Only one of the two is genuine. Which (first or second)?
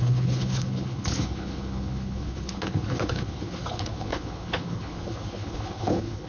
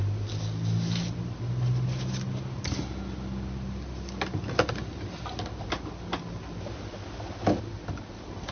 second